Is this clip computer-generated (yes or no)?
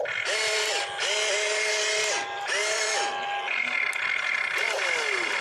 no